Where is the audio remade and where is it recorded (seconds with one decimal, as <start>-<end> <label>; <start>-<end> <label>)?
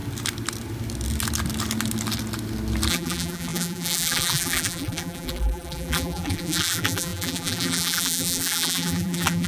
0.0-2.9 recorded; 2.9-9.5 remade